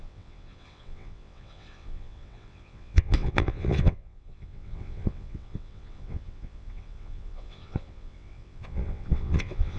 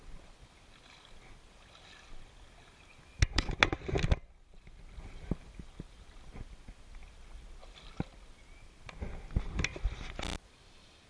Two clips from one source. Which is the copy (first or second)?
first